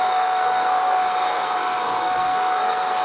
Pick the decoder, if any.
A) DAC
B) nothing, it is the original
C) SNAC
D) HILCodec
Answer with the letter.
C